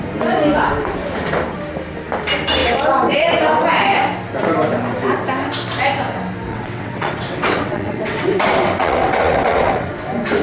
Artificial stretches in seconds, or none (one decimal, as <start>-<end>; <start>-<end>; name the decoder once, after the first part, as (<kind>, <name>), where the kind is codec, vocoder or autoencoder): 6.5-9.9 (vocoder, WaveNeXt)